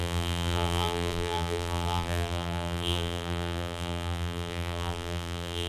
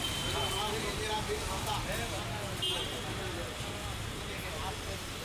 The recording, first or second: second